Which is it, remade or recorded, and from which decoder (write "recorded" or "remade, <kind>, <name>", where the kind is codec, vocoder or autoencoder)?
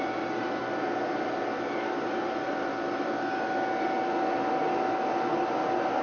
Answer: recorded